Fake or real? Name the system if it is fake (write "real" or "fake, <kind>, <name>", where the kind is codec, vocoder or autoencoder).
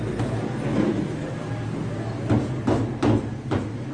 real